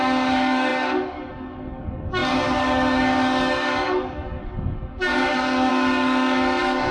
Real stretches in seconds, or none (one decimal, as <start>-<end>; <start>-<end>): none